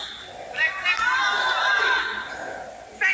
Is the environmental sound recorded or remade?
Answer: recorded